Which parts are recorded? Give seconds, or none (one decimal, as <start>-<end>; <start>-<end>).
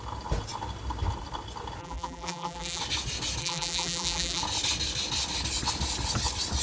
0.0-1.8; 2.8-3.4; 4.4-6.6